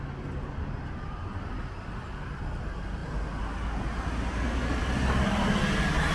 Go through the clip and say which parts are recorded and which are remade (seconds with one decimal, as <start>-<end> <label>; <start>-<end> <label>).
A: 0.0-6.1 recorded